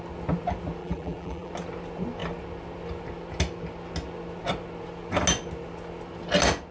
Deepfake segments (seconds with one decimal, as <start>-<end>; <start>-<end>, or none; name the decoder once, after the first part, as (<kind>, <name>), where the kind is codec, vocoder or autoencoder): 0.8-1.5 (vocoder, BigVGAN v2)